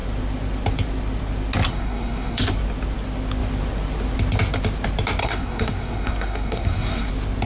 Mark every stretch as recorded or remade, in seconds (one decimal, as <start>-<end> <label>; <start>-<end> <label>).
0.0-1.7 recorded; 1.7-2.4 remade; 2.4-5.2 recorded; 5.2-7.1 remade; 7.1-7.5 recorded